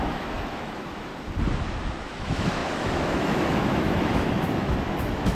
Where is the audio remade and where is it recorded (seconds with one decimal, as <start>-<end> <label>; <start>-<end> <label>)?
0.0-1.1 remade; 1.1-2.0 recorded; 2.0-5.3 remade